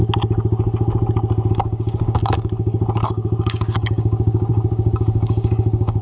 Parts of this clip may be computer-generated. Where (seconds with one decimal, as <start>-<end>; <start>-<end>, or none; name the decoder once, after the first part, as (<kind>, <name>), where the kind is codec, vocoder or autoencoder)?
1.5-6.0 (codec, DAC)